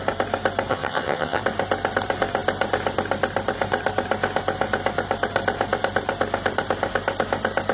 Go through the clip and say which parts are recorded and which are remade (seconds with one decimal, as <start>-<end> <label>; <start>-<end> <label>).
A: 0.0-0.7 recorded; 0.7-1.4 remade; 1.4-7.7 recorded